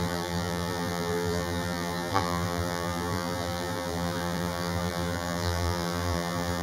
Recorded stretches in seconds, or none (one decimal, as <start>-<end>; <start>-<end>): none